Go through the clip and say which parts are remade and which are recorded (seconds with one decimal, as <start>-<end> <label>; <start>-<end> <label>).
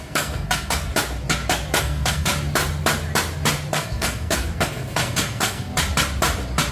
0.0-0.9 remade; 0.9-1.8 recorded; 1.8-2.3 remade; 2.3-3.7 recorded; 3.7-5.7 remade; 5.7-6.7 recorded